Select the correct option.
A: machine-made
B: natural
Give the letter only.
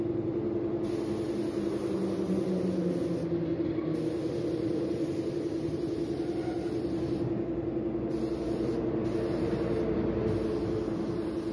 B